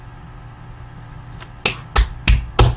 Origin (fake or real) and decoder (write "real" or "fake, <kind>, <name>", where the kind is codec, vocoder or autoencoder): real